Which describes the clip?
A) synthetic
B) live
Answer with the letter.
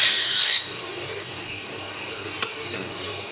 A